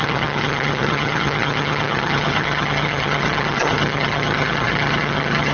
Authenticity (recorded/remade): remade